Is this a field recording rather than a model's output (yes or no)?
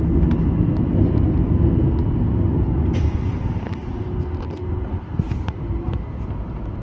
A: yes